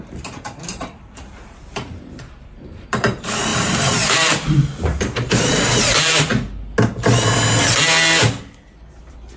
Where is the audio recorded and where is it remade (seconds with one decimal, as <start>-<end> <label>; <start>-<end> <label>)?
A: 0.0-6.3 remade; 6.3-9.0 recorded; 9.0-9.4 remade